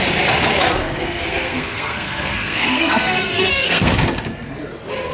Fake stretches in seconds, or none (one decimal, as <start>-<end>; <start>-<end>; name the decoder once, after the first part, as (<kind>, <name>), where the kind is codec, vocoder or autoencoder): 0.8-3.9 (codec, SNAC)